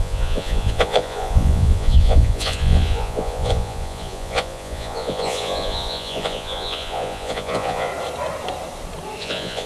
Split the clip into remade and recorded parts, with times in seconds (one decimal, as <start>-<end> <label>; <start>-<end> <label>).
0.0-7.9 remade; 7.9-9.2 recorded; 9.2-9.7 remade